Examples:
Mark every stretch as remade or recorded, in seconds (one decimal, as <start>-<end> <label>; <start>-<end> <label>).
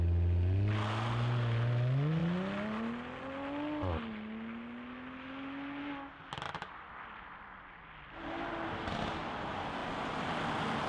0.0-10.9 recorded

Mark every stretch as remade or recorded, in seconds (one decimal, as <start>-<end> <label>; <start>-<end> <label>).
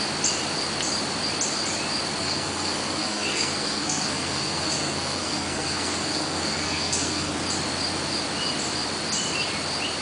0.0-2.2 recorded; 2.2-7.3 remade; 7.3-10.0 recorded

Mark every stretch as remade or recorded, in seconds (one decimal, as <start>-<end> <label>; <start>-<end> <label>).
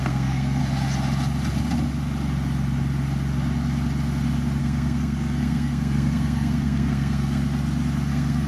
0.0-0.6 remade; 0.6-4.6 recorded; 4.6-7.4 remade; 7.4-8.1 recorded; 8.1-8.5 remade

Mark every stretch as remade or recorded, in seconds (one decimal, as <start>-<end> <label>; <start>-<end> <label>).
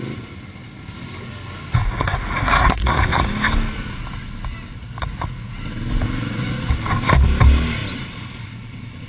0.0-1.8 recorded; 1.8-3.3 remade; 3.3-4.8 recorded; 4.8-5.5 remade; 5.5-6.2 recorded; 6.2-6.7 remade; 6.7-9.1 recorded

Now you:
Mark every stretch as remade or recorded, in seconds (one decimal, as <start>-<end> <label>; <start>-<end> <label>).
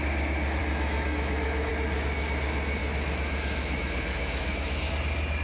0.0-0.6 recorded; 0.6-1.7 remade; 1.7-2.8 recorded; 2.8-4.9 remade; 4.9-5.4 recorded